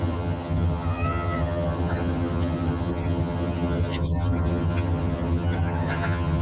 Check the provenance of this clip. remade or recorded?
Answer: remade